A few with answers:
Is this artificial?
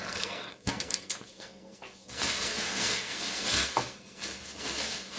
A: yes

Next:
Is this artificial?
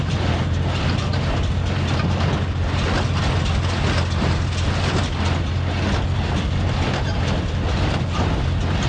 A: no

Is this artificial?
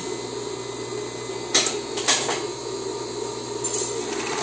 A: no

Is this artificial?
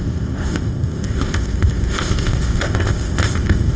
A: yes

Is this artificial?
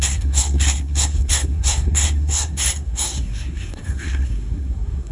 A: yes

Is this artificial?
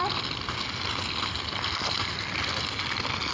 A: no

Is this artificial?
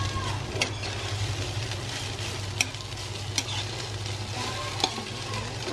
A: no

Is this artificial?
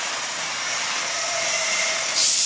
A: yes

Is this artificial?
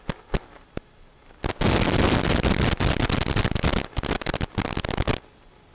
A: no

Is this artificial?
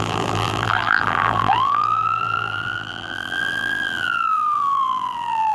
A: yes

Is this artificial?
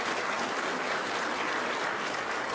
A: no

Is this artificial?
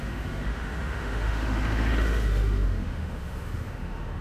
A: yes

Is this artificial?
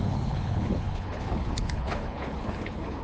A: yes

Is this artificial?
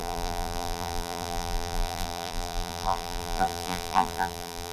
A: yes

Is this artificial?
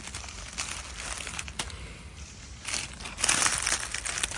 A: no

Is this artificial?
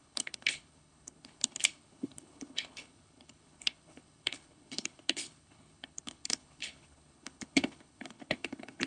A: yes